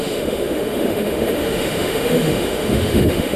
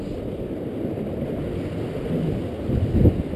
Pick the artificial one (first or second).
first